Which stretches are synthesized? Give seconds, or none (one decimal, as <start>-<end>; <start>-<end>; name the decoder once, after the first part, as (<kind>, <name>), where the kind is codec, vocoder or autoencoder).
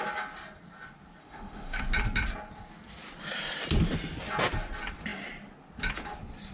1.2-1.8 (autoencoder, DAC-VAE)